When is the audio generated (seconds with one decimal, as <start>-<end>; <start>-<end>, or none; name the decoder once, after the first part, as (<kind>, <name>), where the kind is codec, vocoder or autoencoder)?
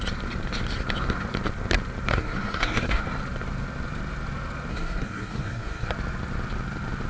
2.1-3.0 (codec, SNAC); 4.7-5.9